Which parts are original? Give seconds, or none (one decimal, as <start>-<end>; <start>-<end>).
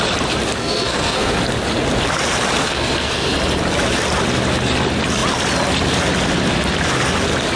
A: 0.0-0.6; 1.4-2.6; 3.3-7.6